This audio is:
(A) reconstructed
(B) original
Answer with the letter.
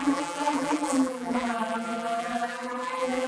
A